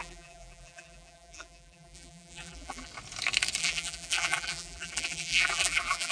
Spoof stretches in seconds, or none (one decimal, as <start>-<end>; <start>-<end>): 0.0-2.9; 3.6-6.1